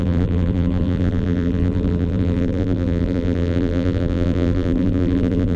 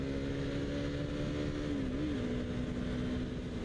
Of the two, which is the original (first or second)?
second